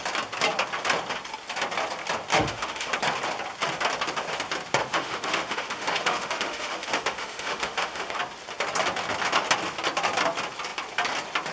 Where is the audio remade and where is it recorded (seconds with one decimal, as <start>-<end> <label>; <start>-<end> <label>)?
0.0-2.3 recorded; 2.3-2.9 remade; 2.9-4.8 recorded; 4.8-8.2 remade; 8.2-11.5 recorded